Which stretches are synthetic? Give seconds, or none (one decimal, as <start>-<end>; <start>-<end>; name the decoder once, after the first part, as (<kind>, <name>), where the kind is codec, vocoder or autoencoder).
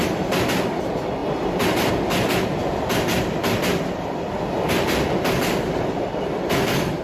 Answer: 1.2-1.9 (vocoder, BigVGAN v2); 2.6-7.0